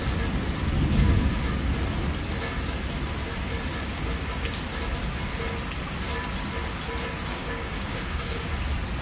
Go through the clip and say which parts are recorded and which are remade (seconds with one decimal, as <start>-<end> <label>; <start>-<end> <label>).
0.0-7.3 recorded; 7.3-8.5 remade; 8.5-9.0 recorded